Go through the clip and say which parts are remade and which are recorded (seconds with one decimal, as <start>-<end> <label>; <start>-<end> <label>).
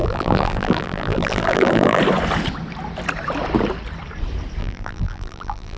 0.0-2.0 remade; 2.0-4.6 recorded; 4.6-5.8 remade